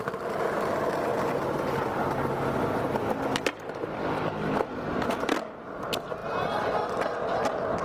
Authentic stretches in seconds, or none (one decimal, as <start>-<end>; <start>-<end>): 0.0-7.8